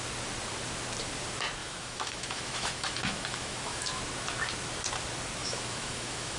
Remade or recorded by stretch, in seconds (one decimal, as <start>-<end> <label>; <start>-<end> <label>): 0.0-1.6 recorded; 1.6-4.0 remade; 4.0-5.4 recorded; 5.4-6.4 remade